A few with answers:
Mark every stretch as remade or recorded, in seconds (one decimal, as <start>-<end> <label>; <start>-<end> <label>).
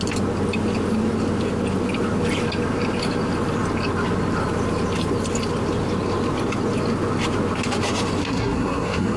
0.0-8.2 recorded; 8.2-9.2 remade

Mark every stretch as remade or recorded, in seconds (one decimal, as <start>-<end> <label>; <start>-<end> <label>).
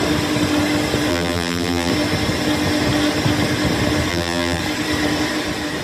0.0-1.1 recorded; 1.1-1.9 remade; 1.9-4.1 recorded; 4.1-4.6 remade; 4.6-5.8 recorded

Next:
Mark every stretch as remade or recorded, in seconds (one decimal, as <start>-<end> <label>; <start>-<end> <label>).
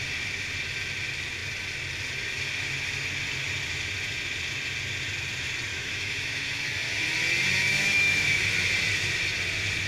0.0-5.7 recorded; 5.7-6.7 remade; 6.7-7.7 recorded; 7.7-8.4 remade; 8.4-9.9 recorded